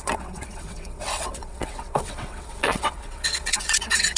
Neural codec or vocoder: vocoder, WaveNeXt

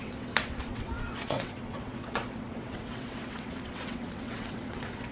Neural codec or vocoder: vocoder, WaveNeXt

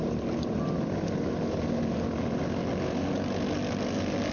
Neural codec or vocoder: none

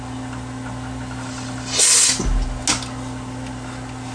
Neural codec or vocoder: none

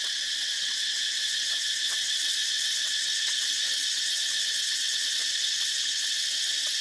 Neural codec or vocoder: vocoder, WaveNeXt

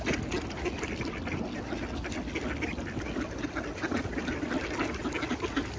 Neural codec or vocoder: none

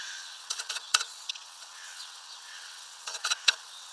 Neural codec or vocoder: vocoder, WaveNeXt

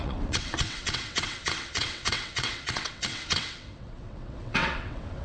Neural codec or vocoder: vocoder, WaveNeXt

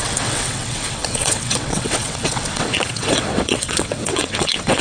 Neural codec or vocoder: vocoder, WaveNeXt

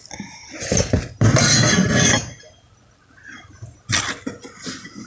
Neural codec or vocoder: none